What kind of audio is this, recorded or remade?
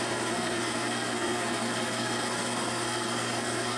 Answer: remade